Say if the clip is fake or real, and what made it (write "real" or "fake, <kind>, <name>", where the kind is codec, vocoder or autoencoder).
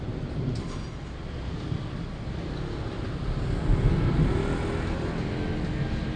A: real